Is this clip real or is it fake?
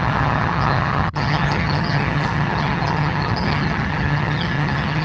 fake